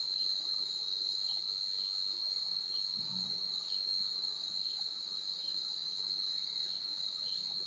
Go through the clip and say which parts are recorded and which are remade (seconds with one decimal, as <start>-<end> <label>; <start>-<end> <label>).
0.0-1.3 remade; 1.3-2.2 recorded; 2.2-7.7 remade